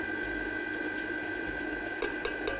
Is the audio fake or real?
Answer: real